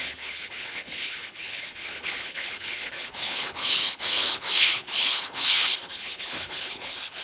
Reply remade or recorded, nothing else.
remade